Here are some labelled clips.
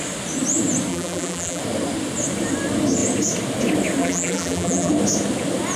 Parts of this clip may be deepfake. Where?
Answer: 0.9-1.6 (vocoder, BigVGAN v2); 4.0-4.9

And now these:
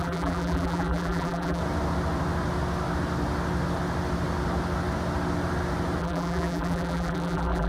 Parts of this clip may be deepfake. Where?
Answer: 0.0-1.6 (vocoder, BigVGAN v2); 6.0-7.7